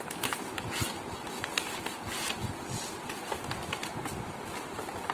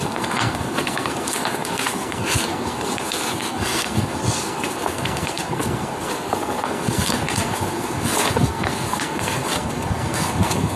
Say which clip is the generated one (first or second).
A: second